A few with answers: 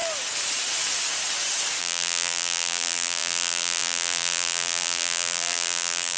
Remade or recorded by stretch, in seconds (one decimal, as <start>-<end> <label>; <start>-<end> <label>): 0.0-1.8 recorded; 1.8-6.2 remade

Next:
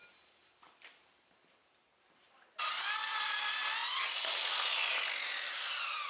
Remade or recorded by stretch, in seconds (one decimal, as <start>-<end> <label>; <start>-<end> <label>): 0.0-3.3 remade; 3.3-6.1 recorded

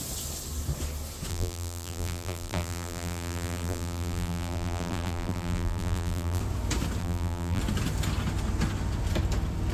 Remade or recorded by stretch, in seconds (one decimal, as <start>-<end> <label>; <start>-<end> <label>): 0.0-1.3 recorded; 1.3-6.4 remade; 6.4-7.0 recorded; 7.0-7.6 remade; 7.6-9.7 recorded

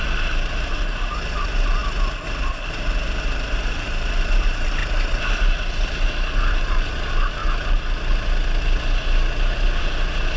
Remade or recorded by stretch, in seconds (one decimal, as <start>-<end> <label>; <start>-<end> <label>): 0.0-1.8 remade; 1.8-2.5 recorded; 2.5-4.8 remade; 4.8-6.5 recorded; 6.5-7.4 remade; 7.4-9.8 recorded; 9.8-10.4 remade

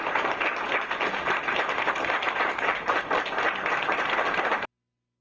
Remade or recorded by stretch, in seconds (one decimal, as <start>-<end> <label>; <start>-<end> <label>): 0.0-3.0 remade; 3.0-5.2 recorded